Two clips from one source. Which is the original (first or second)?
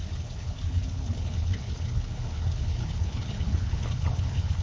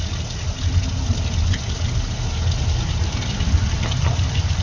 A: second